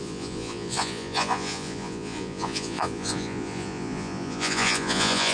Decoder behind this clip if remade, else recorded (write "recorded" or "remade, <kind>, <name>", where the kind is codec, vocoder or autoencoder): remade, vocoder, Vocos